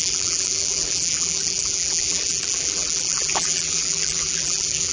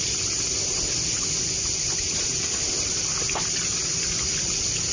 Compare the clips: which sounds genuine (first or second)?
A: second